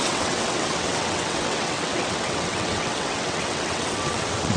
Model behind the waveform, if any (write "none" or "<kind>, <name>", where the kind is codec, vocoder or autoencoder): vocoder, WaveNeXt